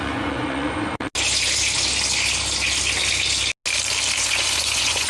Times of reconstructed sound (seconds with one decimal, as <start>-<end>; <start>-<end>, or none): 0.0-1.1; 4.2-5.1